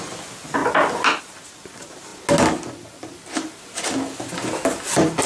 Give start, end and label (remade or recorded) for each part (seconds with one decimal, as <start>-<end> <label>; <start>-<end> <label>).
0.0-5.3 recorded